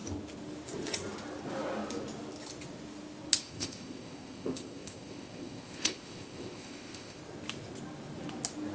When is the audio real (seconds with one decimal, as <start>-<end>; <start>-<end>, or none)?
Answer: 0.0-3.4; 7.2-8.7